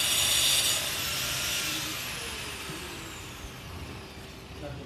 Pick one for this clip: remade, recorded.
recorded